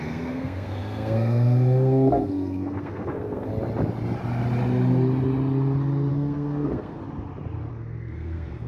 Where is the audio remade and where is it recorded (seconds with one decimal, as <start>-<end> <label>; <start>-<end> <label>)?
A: 0.0-3.5 remade; 3.5-6.1 recorded; 6.1-7.0 remade; 7.0-7.7 recorded; 7.7-8.7 remade